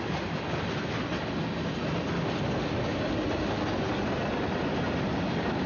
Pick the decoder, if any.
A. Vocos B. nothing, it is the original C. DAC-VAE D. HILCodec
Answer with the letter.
B